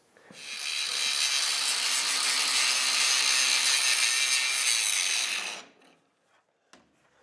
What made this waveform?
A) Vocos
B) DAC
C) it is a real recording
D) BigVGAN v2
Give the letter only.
C